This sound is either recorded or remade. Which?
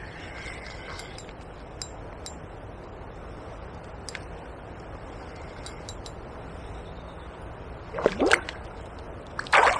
recorded